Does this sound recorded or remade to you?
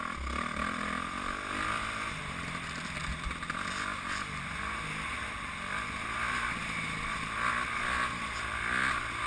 recorded